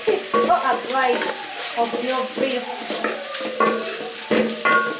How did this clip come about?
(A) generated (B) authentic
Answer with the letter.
B